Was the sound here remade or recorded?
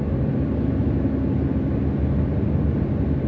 recorded